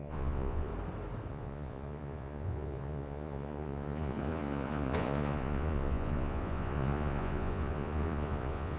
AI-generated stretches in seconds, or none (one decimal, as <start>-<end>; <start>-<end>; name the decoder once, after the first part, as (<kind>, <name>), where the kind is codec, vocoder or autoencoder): 0.0-0.7 (vocoder, Vocos); 1.3-8.8